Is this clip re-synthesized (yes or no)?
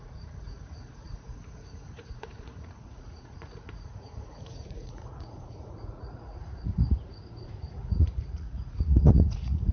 yes